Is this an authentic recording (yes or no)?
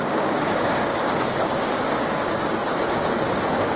no